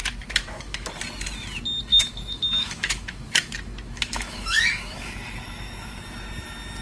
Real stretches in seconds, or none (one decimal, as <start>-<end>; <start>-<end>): 0.9-1.9; 6.0-6.8